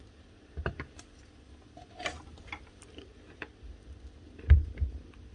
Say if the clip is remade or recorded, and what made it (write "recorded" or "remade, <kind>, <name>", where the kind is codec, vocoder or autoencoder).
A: recorded